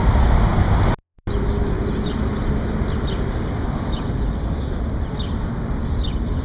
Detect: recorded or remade recorded